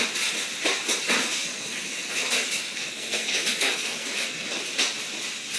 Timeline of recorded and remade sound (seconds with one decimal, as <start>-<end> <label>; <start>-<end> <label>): 0.0-1.2 recorded; 1.2-4.6 remade; 4.6-5.6 recorded